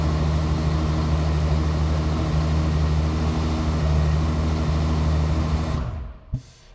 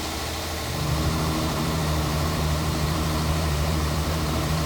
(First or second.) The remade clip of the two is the second